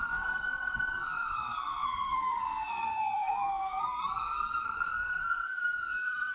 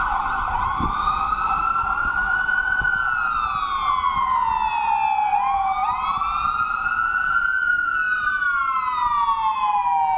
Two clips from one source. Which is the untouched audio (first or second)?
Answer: second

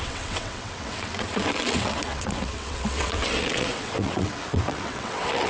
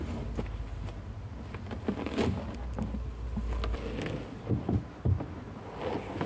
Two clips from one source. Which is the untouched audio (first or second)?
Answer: second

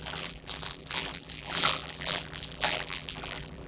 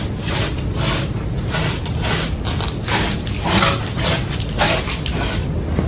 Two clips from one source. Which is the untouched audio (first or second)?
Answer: second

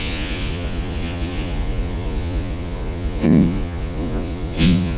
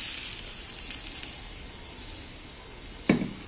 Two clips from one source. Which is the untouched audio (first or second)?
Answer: second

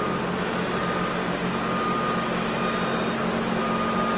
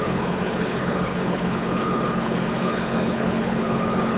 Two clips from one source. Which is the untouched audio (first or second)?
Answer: first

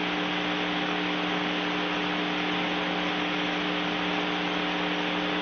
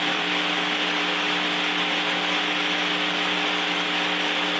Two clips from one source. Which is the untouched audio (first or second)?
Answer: first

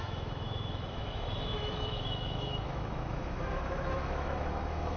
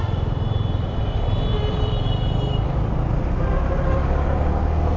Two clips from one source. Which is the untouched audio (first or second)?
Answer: second